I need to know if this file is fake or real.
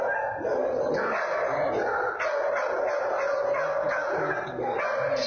real